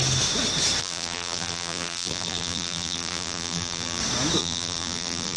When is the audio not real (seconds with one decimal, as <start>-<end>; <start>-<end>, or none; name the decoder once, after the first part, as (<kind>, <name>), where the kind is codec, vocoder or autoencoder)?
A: 0.8-4.0 (vocoder, BigVGAN v2); 4.4-5.4